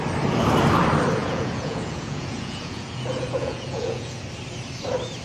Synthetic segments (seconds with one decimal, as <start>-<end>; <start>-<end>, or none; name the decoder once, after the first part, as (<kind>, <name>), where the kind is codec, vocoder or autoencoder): 1.2-4.2 (vocoder, Vocos)